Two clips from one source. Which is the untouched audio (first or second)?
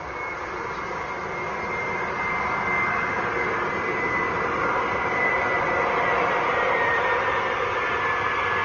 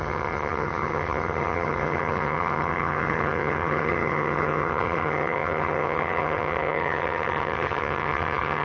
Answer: first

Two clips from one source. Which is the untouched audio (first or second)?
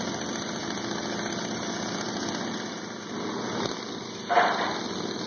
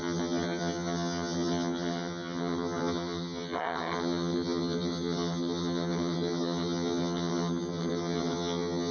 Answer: first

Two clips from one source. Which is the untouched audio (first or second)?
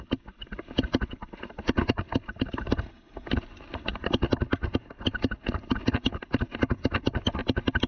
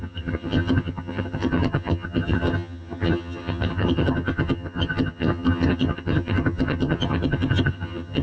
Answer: first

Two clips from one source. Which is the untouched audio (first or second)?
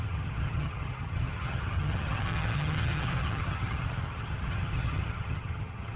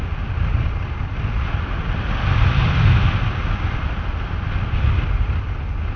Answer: second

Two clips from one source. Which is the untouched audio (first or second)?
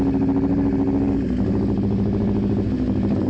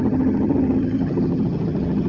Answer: first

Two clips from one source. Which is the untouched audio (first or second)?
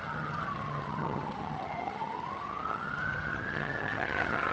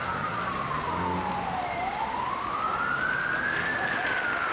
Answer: second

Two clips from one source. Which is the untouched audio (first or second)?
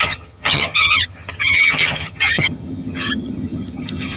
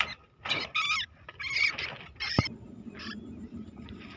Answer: second